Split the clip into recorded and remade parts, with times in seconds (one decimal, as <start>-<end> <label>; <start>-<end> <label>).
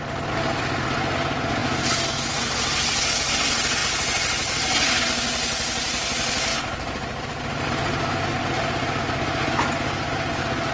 0.0-6.5 recorded; 6.5-8.4 remade; 8.4-10.7 recorded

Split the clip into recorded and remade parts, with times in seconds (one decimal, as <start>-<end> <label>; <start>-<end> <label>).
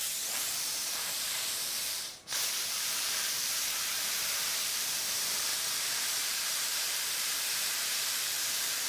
0.0-2.2 remade; 2.2-2.7 recorded; 2.7-8.9 remade